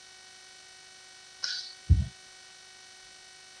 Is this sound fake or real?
real